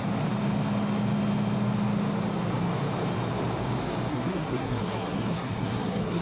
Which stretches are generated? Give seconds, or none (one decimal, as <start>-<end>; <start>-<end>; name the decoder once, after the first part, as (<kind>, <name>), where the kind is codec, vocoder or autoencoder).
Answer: 4.1-6.2 (codec, SNAC)